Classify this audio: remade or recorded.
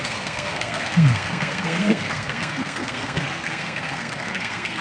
remade